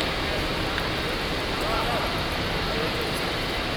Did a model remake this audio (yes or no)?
no